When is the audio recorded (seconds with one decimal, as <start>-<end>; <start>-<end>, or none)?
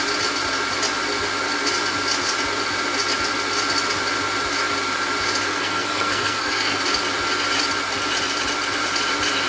0.0-5.5; 6.8-9.5